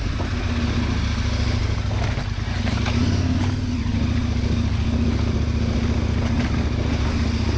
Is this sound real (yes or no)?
yes